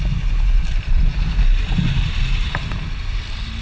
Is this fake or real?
fake